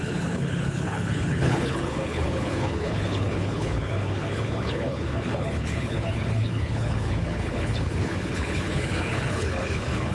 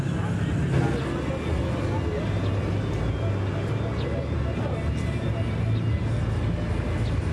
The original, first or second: second